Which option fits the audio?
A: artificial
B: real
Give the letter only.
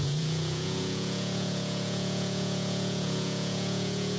A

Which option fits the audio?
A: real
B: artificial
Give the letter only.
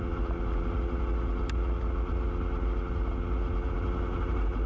A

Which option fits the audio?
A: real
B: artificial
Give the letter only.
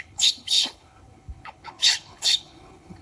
B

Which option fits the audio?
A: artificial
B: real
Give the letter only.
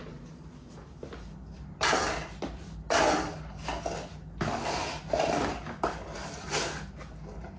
B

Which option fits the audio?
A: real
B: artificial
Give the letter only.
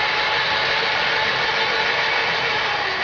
A